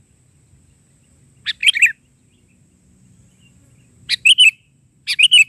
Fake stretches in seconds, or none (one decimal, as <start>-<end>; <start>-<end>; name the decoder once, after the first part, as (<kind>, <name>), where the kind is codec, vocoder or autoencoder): none